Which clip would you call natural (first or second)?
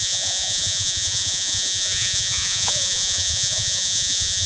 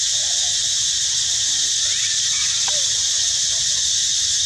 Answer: second